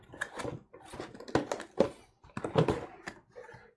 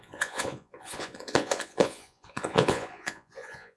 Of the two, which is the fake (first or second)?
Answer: second